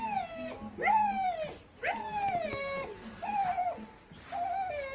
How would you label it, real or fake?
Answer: real